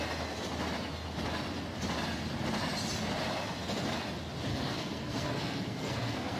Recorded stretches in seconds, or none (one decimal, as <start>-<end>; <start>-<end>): 0.0-4.5